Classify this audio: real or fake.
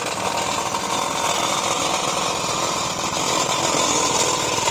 real